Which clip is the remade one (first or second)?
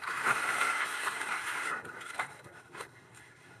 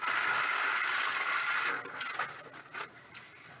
first